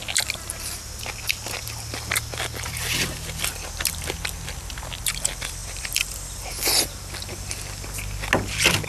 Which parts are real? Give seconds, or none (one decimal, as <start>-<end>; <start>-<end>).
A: 0.0-5.6; 6.5-8.9